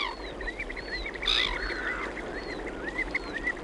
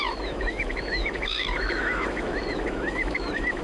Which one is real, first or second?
first